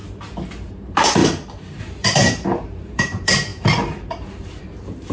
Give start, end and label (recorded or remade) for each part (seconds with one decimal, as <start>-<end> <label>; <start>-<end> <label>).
0.0-0.7 recorded; 0.7-1.2 remade; 1.2-1.8 recorded; 1.8-5.1 remade